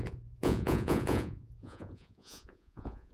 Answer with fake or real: fake